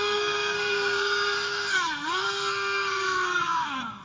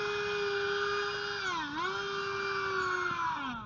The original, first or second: second